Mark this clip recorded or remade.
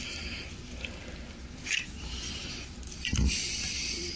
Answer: recorded